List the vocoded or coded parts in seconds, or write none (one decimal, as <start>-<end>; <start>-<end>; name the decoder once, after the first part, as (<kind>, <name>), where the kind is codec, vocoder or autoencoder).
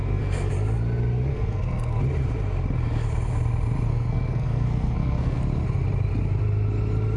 0.0-0.5 (codec, SNAC); 1.3-2.0; 3.9-5.4